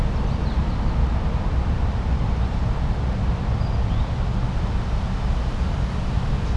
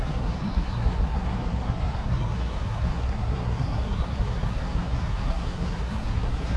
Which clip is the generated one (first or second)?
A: second